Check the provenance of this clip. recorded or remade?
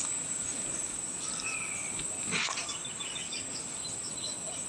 recorded